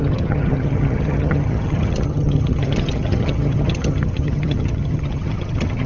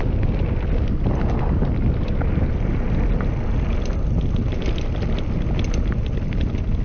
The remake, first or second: first